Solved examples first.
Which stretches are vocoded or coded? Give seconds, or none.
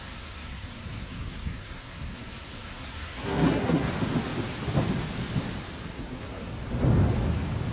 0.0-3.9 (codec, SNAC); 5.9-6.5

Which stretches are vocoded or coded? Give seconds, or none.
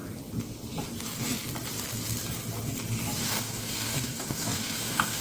3.2-5.2 (codec, DAC)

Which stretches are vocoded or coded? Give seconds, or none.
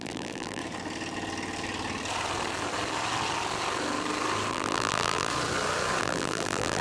0.0-0.6 (vocoder, BigVGAN v2); 4.5-5.3; 6.0-6.8